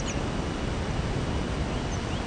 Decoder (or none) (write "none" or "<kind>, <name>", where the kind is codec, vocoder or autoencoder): none